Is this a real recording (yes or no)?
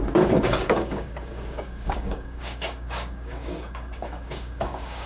no